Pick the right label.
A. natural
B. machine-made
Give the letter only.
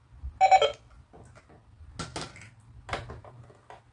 A